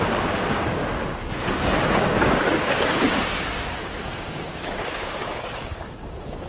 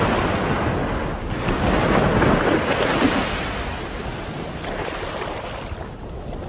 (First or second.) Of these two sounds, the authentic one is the second